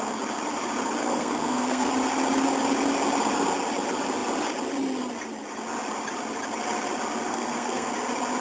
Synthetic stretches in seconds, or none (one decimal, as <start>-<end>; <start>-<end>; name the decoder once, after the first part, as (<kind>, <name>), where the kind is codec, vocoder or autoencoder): 1.0-1.9 (codec, SNAC); 7.3-7.9